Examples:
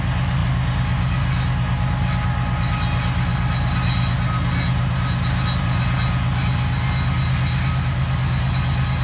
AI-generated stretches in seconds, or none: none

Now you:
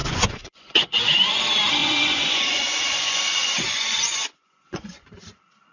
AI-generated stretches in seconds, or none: 0.0-1.4 (vocoder, Vocos); 1.8-5.2

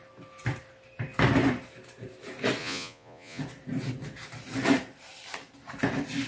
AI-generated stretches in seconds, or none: 2.6-3.4 (vocoder, Vocos)

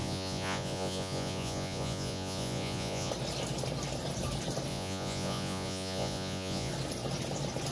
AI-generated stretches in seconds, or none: 0.0-3.1 (vocoder, Vocos); 4.7-6.7

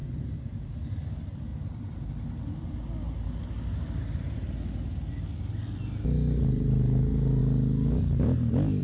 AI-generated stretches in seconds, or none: none

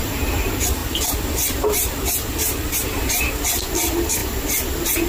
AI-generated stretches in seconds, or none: none